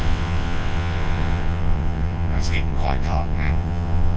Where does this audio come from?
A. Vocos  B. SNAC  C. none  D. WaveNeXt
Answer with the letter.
D